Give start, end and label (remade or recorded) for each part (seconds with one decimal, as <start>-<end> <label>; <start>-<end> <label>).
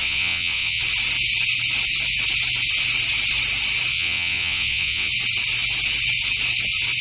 0.0-0.8 remade; 0.8-3.9 recorded; 3.9-5.1 remade; 5.1-7.0 recorded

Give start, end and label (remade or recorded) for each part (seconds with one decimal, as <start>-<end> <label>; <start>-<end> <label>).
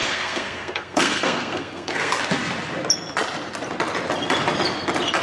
0.0-2.2 remade; 2.2-5.2 recorded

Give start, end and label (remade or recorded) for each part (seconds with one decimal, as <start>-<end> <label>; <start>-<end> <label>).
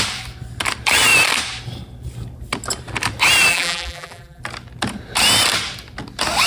0.0-3.5 recorded; 3.5-4.4 remade; 4.4-6.5 recorded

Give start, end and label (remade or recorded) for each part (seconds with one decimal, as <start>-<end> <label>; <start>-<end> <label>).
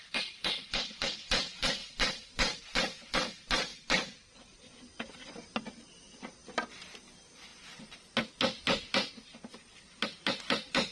0.0-1.8 recorded; 1.8-2.6 remade; 2.6-10.9 recorded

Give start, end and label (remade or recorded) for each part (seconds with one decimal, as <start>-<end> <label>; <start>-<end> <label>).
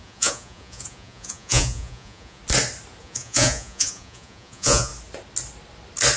0.0-2.4 remade; 2.4-3.0 recorded; 3.0-4.9 remade; 4.9-6.2 recorded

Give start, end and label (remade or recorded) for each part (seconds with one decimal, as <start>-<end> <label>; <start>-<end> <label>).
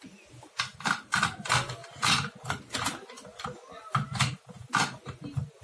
0.0-5.6 recorded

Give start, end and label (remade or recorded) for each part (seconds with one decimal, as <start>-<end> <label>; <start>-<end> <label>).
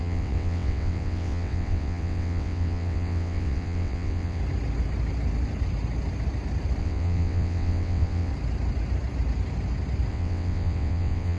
0.0-4.4 remade; 4.4-6.8 recorded; 6.8-8.3 remade; 8.3-10.1 recorded; 10.1-11.4 remade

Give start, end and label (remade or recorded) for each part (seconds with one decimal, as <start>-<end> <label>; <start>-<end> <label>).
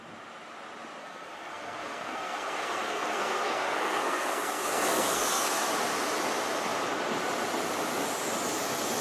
0.0-1.0 recorded; 1.0-5.7 remade; 5.7-9.0 recorded